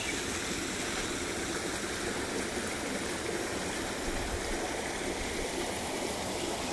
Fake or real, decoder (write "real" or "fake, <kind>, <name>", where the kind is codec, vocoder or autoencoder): real